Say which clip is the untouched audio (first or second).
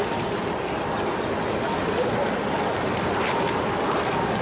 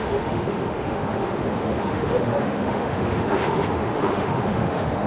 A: first